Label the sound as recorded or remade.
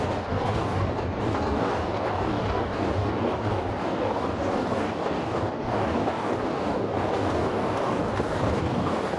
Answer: remade